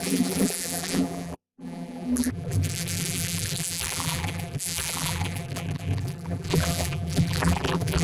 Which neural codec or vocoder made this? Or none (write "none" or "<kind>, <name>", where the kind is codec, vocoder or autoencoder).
vocoder, BigVGAN v2